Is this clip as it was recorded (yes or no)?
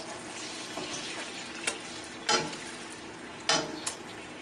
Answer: yes